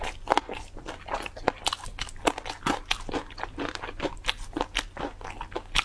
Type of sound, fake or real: real